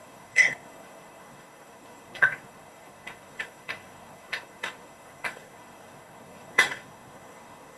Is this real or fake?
fake